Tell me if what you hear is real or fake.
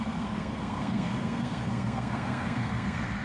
fake